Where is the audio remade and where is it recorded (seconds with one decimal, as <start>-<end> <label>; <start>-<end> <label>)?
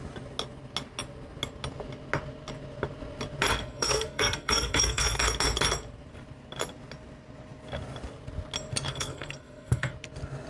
0.0-3.5 recorded; 3.5-5.2 remade; 5.2-8.9 recorded; 8.9-9.9 remade; 9.9-10.5 recorded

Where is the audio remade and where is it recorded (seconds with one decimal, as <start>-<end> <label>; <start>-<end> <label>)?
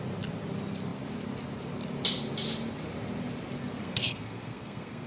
0.0-3.8 recorded; 3.8-5.1 remade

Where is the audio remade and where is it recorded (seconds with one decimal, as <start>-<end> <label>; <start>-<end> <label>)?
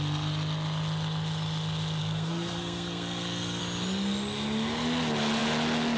0.0-2.0 recorded; 2.0-3.6 remade; 3.6-6.0 recorded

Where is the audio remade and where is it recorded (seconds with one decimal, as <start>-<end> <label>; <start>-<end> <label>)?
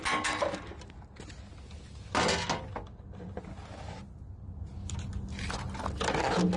0.0-6.6 recorded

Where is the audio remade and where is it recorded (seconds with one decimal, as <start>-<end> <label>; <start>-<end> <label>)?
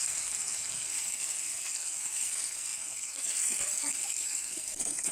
0.0-5.1 remade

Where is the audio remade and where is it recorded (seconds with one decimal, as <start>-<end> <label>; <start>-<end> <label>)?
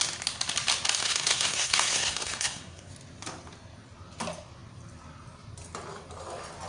0.0-1.0 recorded; 1.0-2.9 remade; 2.9-6.7 recorded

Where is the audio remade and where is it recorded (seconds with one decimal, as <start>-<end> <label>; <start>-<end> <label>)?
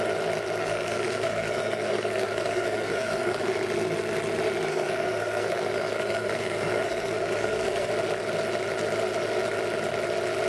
0.0-0.6 recorded; 0.6-3.5 remade; 3.5-4.7 recorded; 4.7-7.9 remade; 7.9-10.5 recorded